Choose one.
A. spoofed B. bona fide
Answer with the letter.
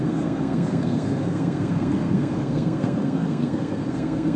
A